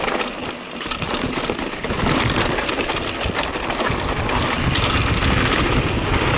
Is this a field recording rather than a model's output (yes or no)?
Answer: yes